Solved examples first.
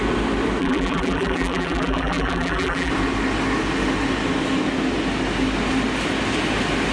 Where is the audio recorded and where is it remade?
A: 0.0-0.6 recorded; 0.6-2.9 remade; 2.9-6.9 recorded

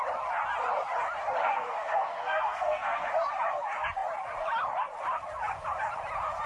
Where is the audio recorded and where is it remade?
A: 0.0-1.4 recorded; 1.4-3.1 remade; 3.1-6.5 recorded